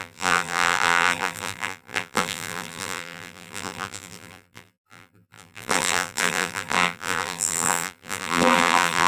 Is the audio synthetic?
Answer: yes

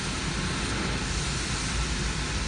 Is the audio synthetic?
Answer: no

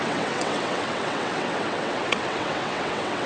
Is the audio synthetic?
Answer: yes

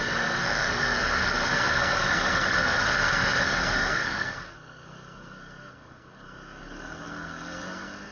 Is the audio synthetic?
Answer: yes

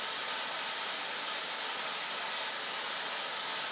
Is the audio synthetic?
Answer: no